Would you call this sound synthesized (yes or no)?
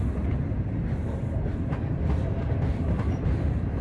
no